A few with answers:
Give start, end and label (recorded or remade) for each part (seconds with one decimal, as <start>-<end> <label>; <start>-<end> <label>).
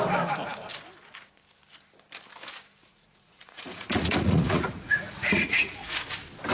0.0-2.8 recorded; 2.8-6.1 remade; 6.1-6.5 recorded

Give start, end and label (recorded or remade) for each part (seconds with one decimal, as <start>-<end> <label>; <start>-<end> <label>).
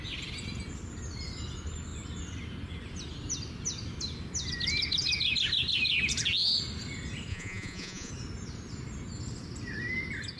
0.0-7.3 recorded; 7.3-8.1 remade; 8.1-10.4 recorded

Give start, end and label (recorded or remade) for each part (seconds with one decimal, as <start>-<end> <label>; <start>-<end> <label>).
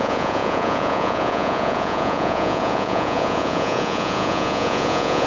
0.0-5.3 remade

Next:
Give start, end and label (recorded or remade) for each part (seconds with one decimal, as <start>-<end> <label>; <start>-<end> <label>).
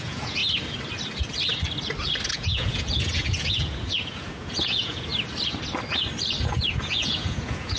0.0-0.4 remade; 0.4-2.3 recorded; 2.3-5.1 remade; 5.1-6.4 recorded; 6.4-7.8 remade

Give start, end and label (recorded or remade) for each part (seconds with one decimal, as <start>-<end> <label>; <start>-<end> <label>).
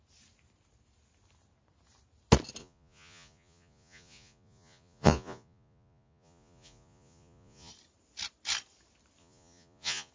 0.0-2.6 recorded; 2.6-7.7 remade; 7.7-9.2 recorded; 9.2-10.1 remade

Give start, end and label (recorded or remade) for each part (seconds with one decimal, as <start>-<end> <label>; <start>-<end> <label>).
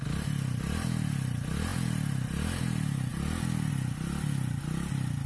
0.0-5.3 recorded